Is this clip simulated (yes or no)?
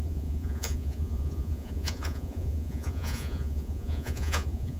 yes